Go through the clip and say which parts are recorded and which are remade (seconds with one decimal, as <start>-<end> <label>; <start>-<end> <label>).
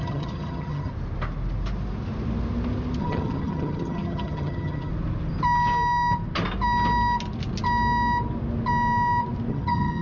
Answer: 0.0-0.9 remade; 0.9-3.0 recorded; 3.0-4.9 remade; 4.9-9.5 recorded; 9.5-10.0 remade